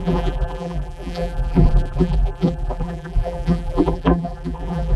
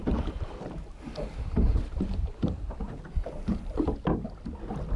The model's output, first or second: first